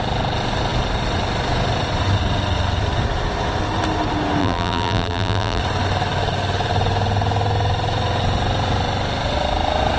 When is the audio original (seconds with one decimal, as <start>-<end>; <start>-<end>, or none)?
0.0-4.4; 5.6-10.0